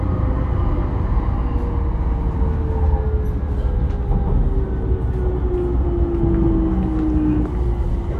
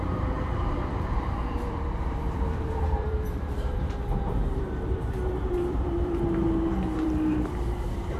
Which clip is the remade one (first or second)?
second